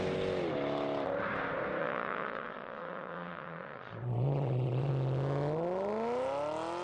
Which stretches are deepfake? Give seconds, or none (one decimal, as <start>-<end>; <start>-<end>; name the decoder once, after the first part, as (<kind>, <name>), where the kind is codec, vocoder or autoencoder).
1.8-4.9 (vocoder, Vocos)